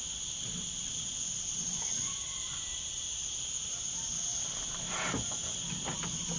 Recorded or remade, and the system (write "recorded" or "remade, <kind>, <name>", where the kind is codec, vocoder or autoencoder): recorded